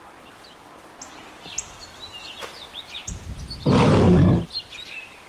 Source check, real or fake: real